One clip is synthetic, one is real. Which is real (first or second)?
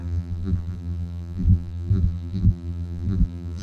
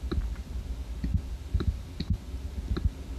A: second